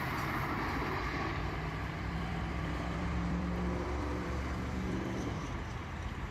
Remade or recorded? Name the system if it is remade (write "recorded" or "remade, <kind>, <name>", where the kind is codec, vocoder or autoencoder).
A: remade, vocoder, BigVGAN v2